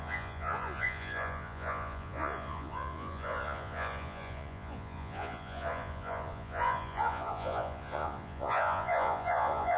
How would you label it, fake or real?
fake